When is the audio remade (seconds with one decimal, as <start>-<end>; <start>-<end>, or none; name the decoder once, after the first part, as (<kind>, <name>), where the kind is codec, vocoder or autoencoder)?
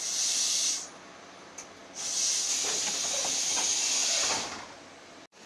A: none